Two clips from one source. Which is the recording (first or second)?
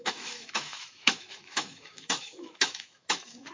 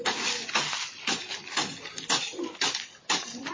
second